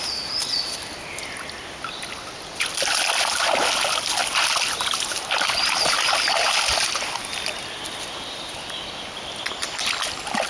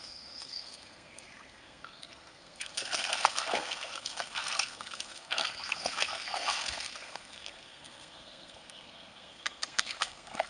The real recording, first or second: first